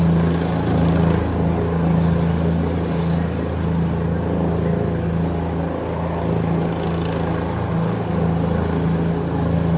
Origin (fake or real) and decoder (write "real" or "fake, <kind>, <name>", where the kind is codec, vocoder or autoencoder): real